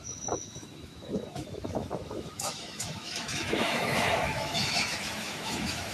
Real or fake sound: fake